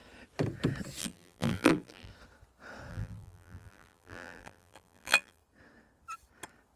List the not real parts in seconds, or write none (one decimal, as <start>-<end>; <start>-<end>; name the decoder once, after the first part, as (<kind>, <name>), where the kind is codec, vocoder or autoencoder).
1.0-2.1 (vocoder, BigVGAN v2); 2.9-5.4